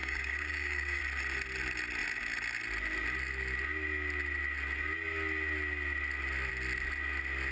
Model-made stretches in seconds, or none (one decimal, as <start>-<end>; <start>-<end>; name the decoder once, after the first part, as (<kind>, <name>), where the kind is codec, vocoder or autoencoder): 0.0-1.0 (codec, DAC)